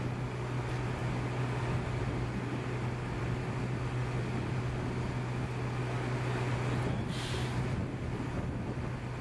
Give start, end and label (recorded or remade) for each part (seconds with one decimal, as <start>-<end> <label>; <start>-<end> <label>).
0.0-9.2 recorded

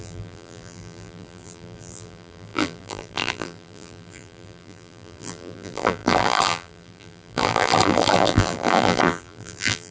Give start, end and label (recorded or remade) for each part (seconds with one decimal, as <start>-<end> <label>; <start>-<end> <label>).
0.0-9.9 remade

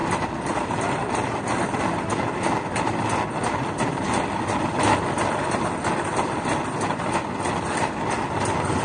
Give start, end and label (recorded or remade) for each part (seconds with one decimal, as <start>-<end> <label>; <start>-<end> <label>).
0.0-1.8 remade; 1.8-8.8 recorded